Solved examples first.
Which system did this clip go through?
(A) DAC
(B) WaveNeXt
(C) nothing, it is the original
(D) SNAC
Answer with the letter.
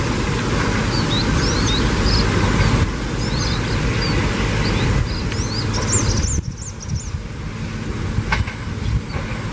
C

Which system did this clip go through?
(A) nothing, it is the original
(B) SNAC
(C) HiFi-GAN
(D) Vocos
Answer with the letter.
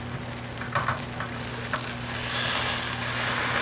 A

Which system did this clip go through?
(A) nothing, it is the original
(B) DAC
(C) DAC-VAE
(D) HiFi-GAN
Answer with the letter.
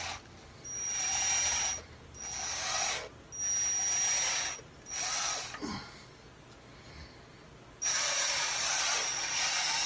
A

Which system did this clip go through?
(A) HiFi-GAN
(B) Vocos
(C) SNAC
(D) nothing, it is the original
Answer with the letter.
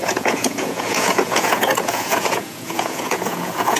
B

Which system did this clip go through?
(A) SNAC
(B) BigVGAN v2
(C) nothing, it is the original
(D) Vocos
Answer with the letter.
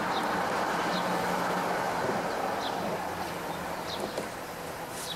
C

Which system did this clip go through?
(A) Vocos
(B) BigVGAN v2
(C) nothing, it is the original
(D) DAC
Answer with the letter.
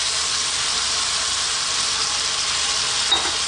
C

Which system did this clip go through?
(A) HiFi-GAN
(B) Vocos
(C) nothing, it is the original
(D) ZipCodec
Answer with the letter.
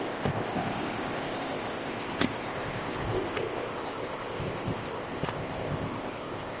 D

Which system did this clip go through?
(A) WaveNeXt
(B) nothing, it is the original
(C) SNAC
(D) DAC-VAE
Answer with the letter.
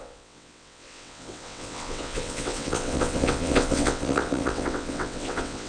A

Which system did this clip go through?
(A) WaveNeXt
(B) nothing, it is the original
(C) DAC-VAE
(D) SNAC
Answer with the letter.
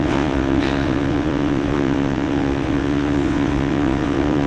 A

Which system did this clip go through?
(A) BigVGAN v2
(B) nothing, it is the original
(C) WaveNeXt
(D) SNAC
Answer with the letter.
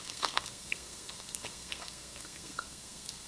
D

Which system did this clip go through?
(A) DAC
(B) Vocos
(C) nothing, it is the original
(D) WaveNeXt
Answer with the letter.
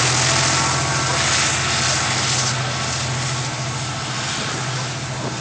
C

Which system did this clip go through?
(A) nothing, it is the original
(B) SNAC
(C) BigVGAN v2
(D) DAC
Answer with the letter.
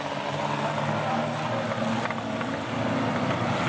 A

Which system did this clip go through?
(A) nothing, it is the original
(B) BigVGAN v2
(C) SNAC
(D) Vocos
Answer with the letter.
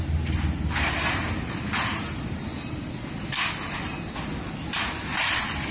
A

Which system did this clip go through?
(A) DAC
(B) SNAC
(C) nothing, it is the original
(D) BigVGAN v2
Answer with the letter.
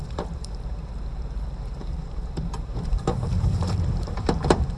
D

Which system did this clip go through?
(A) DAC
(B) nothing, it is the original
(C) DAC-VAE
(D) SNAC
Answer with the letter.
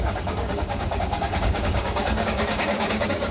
A